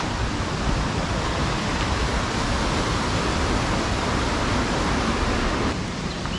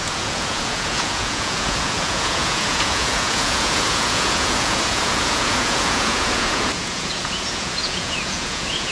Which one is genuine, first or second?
first